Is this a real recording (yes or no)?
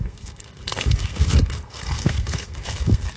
no